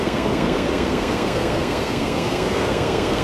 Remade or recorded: remade